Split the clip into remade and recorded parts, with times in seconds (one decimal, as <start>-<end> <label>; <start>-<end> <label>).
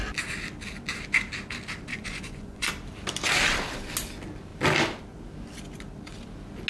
0.0-1.9 recorded; 1.9-2.7 remade; 2.7-6.7 recorded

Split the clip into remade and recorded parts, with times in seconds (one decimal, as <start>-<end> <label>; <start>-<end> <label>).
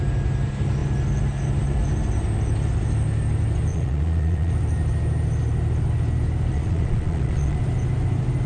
0.0-3.7 recorded; 3.7-4.5 remade; 4.5-6.5 recorded; 6.5-7.6 remade; 7.6-8.5 recorded